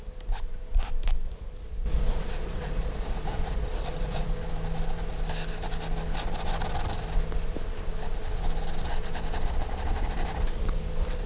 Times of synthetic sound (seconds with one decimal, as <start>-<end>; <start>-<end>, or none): 1.9-4.3